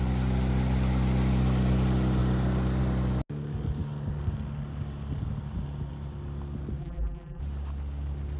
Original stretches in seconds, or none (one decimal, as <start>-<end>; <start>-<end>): 0.0-6.8; 7.4-8.4